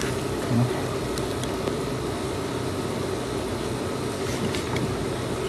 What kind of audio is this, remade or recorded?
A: recorded